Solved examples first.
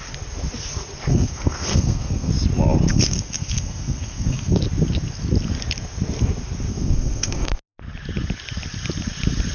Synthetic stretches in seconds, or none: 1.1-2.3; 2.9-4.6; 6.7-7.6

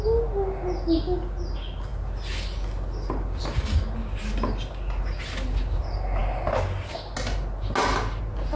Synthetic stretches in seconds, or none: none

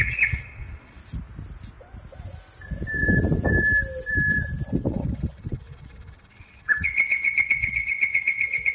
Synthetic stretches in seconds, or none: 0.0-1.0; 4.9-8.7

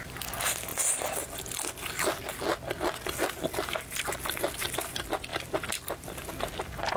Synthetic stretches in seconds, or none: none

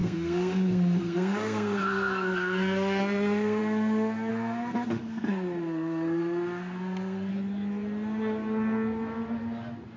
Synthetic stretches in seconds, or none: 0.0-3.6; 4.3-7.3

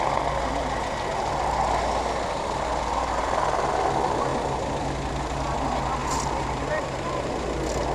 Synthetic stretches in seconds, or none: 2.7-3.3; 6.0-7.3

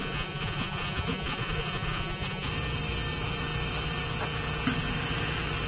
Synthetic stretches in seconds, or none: 0.0-2.5

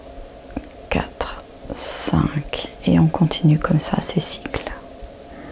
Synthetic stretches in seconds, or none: none